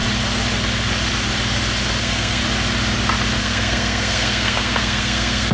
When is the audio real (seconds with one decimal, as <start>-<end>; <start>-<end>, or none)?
0.0-2.0; 2.4-3.4